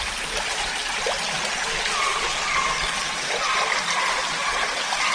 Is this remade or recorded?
recorded